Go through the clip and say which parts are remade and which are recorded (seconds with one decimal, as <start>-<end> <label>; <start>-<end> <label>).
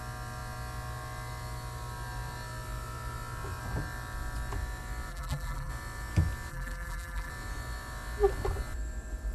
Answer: 0.0-5.1 recorded; 5.1-5.7 remade; 5.7-6.5 recorded; 6.5-7.3 remade; 7.3-9.3 recorded